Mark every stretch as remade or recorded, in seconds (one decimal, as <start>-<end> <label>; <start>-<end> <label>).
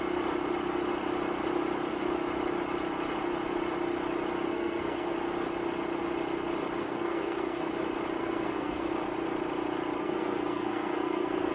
0.0-4.5 recorded; 4.5-5.1 remade; 5.1-6.8 recorded; 6.8-7.7 remade; 7.7-8.2 recorded; 8.2-8.9 remade; 8.9-10.0 recorded; 10.0-11.5 remade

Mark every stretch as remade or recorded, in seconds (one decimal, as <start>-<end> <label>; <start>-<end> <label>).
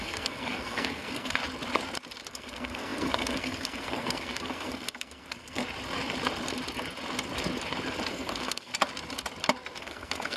0.0-1.4 remade; 1.4-2.3 recorded; 2.3-5.6 remade; 5.6-8.1 recorded; 8.1-8.7 remade; 8.7-9.8 recorded; 9.8-10.4 remade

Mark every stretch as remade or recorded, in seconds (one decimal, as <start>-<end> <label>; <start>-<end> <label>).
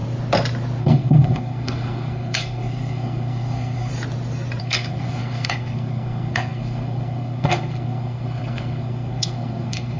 0.0-0.8 recorded; 0.8-3.9 remade; 3.9-4.6 recorded; 4.6-10.0 remade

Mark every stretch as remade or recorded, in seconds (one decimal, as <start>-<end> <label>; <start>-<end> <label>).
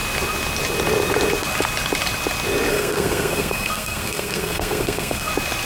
0.0-2.7 recorded; 2.7-5.3 remade; 5.3-5.7 recorded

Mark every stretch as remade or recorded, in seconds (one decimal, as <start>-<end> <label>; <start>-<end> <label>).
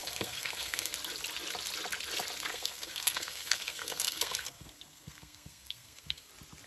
0.0-0.9 remade; 0.9-2.5 recorded; 2.5-6.3 remade; 6.3-6.7 recorded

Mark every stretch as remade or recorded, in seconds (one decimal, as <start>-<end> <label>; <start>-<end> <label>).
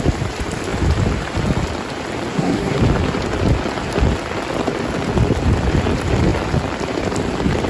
0.0-2.3 recorded; 2.3-2.8 remade; 2.8-7.7 recorded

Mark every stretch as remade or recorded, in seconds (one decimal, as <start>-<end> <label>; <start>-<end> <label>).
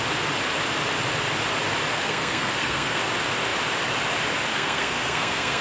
0.0-1.9 recorded; 1.9-3.0 remade; 3.0-4.5 recorded; 4.5-5.6 remade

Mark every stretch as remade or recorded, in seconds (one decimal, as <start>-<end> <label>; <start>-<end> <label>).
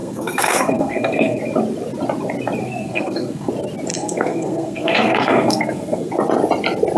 0.0-1.4 remade; 1.4-2.6 recorded; 2.6-3.5 remade; 3.5-3.9 recorded; 3.9-6.1 remade; 6.1-7.0 recorded